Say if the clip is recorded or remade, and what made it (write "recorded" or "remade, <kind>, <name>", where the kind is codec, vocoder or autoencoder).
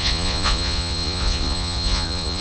remade, vocoder, Vocos